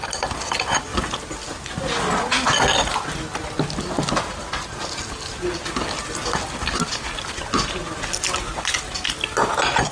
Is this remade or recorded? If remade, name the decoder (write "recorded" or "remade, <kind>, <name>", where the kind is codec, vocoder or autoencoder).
recorded